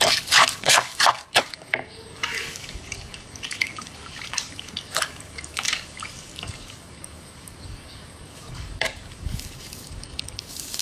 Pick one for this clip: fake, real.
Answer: fake